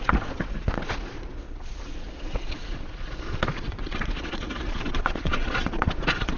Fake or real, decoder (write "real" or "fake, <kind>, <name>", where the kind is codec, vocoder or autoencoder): fake, vocoder, Vocos